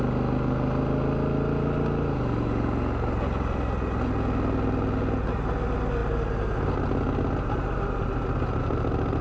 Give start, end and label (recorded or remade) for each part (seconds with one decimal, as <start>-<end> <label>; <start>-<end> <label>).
0.0-9.2 recorded